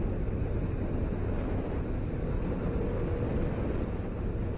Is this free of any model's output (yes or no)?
yes